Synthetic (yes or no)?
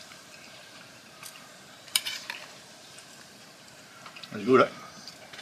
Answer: yes